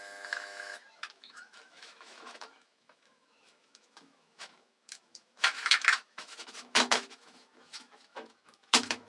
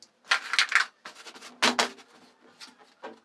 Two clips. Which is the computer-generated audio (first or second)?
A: first